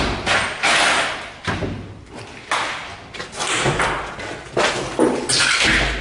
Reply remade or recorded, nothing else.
recorded